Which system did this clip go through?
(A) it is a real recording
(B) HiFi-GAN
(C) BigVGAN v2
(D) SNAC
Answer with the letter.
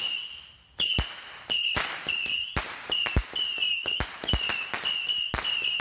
A